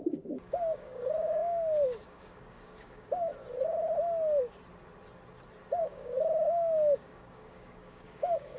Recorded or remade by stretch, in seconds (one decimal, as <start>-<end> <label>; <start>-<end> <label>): 0.0-3.3 remade; 3.3-5.8 recorded; 5.8-8.6 remade